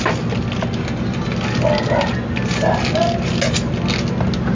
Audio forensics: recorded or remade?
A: recorded